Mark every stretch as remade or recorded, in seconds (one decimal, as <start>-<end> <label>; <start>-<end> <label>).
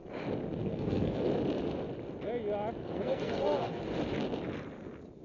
0.0-0.6 recorded; 0.6-1.3 remade; 1.3-2.8 recorded; 2.8-3.8 remade; 3.8-5.2 recorded